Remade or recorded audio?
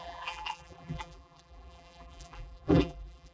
remade